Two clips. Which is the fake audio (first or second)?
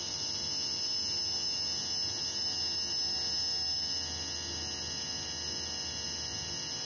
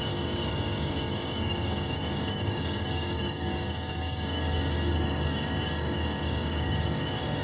second